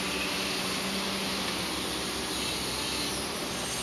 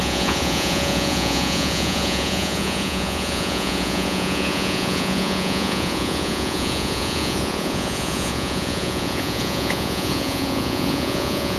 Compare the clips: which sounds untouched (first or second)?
first